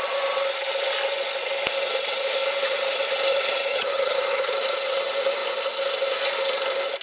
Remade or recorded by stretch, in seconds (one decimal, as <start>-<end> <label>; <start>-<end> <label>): 0.0-3.7 recorded; 3.7-4.5 remade; 4.5-7.0 recorded